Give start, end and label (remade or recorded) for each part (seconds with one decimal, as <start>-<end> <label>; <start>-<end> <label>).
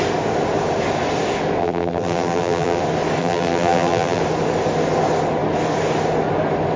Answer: 0.0-1.6 recorded; 1.6-2.8 remade; 2.8-3.2 recorded; 3.2-4.2 remade; 4.2-6.8 recorded